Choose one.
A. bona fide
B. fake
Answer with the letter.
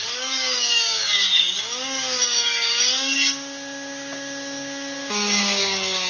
B